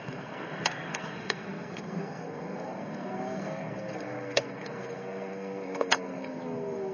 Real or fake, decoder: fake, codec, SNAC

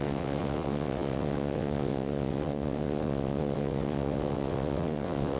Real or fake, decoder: fake, vocoder, WaveNeXt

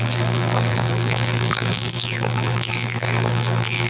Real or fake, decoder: fake, vocoder, BigVGAN v2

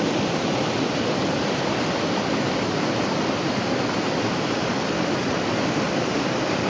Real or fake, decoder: real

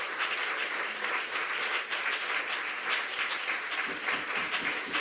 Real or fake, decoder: real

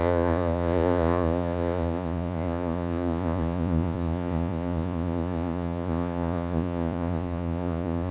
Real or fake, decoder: fake, vocoder, Vocos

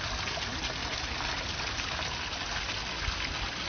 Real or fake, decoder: real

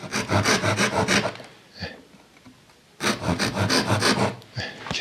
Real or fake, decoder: real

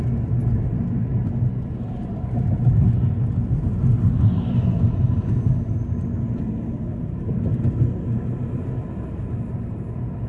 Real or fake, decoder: real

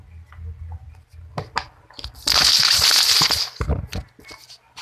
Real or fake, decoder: real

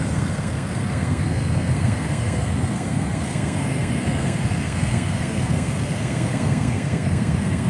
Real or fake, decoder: fake, codec, SNAC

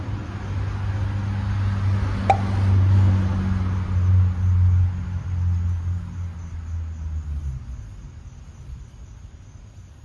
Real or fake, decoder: real